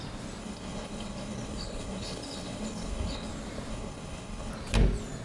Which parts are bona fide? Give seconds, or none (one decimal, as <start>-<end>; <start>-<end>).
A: 0.0-0.4; 3.3-3.7; 4.5-5.2